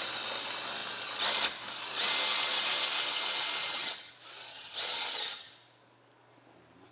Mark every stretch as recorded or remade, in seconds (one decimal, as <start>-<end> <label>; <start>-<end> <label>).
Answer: 0.0-3.6 recorded; 3.6-4.1 remade; 4.1-4.5 recorded; 4.5-5.5 remade; 5.5-6.9 recorded

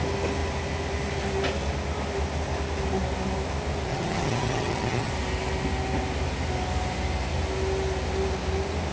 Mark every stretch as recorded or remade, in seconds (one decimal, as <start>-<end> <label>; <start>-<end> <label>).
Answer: 0.0-3.9 recorded; 3.9-5.1 remade; 5.1-8.9 recorded

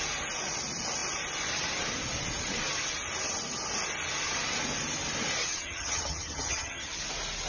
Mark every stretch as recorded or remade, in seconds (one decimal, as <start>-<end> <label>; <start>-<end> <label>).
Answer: 0.0-5.4 recorded; 5.4-7.0 remade; 7.0-7.5 recorded